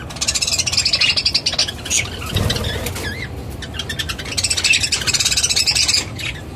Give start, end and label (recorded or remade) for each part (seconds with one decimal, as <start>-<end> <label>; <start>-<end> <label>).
0.0-6.6 recorded